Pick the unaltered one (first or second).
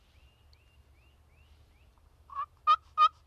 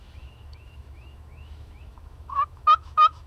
first